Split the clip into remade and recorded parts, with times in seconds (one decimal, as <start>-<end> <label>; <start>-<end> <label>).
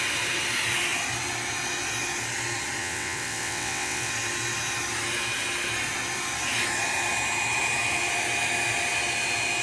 0.0-2.8 recorded; 2.8-4.1 remade; 4.1-9.6 recorded